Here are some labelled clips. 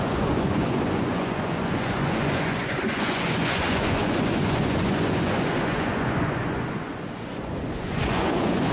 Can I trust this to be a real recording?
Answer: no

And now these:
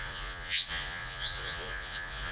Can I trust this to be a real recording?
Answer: no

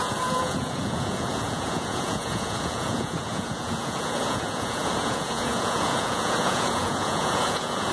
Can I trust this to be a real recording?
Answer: no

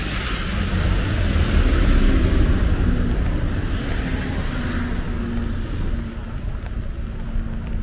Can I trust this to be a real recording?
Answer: yes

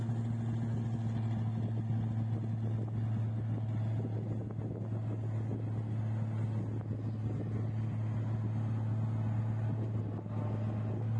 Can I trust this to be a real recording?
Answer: yes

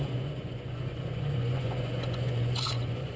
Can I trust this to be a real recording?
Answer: no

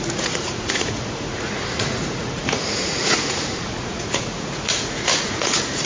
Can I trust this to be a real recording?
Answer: no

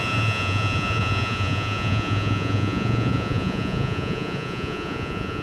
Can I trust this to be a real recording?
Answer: no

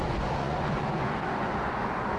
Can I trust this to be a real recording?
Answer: no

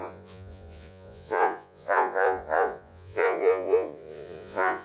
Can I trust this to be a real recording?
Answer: no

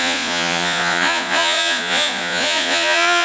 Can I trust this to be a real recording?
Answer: no